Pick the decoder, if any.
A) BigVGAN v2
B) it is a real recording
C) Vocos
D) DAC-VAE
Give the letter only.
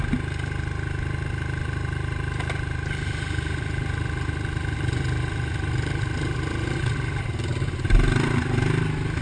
B